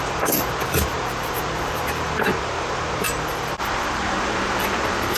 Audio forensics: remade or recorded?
remade